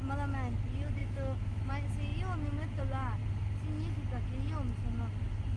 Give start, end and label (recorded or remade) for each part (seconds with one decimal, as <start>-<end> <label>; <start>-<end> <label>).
0.0-1.0 recorded; 1.0-1.7 remade; 1.7-5.6 recorded